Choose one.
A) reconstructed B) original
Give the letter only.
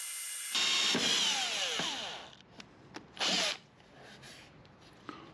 B